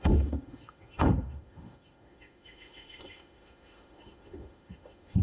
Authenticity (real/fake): fake